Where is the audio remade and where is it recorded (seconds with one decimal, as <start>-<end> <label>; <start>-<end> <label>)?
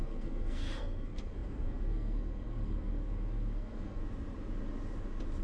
0.0-4.0 remade; 4.0-5.4 recorded